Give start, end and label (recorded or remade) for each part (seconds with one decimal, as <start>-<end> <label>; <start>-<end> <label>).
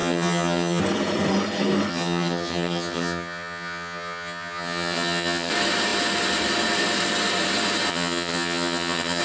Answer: 0.0-0.8 remade; 0.8-1.9 recorded; 1.9-5.5 remade; 5.5-7.9 recorded; 7.9-9.2 remade